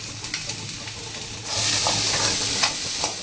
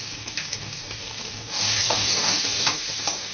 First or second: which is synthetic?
second